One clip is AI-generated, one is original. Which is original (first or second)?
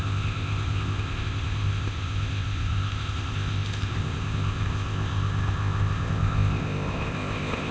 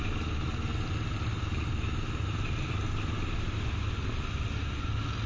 second